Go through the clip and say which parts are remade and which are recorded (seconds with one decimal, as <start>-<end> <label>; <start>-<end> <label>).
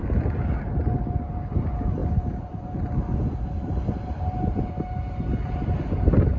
0.0-6.4 recorded